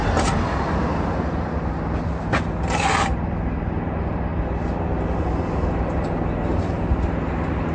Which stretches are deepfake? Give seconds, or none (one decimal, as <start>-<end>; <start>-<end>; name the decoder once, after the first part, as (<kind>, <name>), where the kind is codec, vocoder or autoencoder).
none